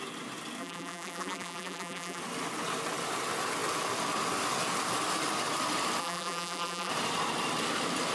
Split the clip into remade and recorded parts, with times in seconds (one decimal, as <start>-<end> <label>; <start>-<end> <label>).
0.0-0.6 recorded; 0.6-2.2 remade; 2.2-6.0 recorded; 6.0-6.9 remade; 6.9-8.1 recorded